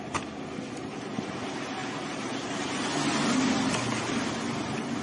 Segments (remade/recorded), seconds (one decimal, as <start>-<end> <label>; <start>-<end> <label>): 0.0-5.0 recorded